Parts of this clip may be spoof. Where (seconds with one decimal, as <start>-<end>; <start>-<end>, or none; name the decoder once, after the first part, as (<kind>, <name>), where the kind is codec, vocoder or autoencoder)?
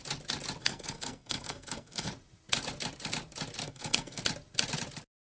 0.6-2.1 (codec, SNAC); 3.6-4.2